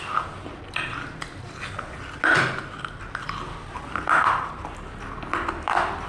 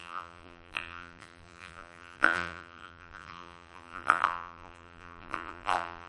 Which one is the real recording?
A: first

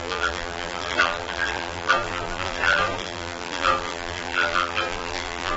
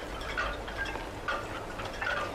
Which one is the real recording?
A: second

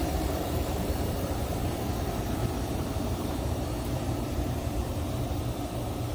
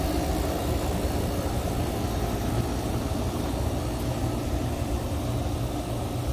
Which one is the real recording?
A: second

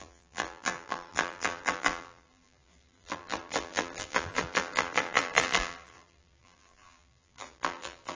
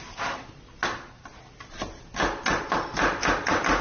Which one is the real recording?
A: second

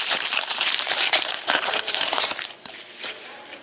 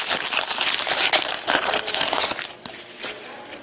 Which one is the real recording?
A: second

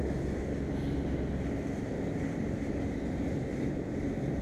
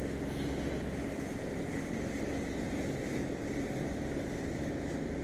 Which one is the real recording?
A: second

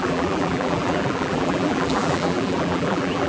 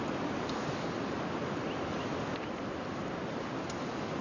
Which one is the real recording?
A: second